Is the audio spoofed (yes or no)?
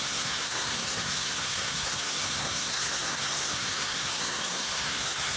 yes